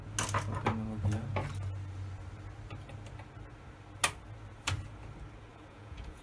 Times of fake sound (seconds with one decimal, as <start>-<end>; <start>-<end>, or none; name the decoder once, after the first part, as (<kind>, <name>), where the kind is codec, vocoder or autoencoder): 5.5-6.2 (vocoder, Vocos)